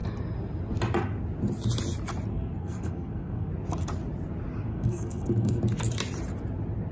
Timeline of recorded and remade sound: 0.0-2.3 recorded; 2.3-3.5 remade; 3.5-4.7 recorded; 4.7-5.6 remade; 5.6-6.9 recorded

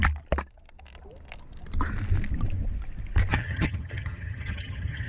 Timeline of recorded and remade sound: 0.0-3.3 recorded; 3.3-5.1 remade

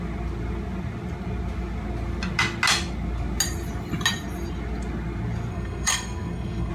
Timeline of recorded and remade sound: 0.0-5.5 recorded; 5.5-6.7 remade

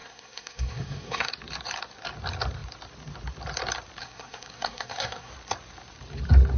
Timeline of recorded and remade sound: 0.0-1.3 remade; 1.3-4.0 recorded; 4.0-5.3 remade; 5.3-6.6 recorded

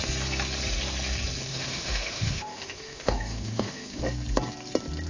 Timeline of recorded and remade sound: 0.0-1.5 recorded; 1.5-4.0 remade; 4.0-5.1 recorded